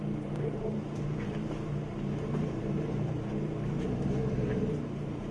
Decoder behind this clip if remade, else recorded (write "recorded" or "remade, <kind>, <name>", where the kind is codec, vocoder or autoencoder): remade, vocoder, BigVGAN v2